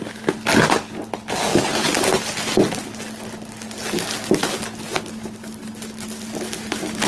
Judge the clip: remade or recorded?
recorded